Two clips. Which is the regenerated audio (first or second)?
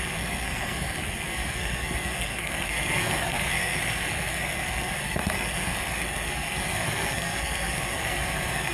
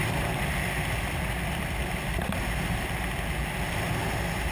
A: first